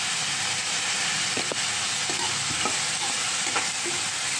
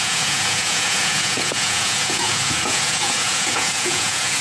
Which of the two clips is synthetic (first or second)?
second